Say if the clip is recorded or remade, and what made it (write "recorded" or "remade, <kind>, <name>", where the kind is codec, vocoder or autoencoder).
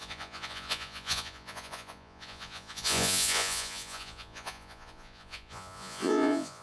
remade, vocoder, Vocos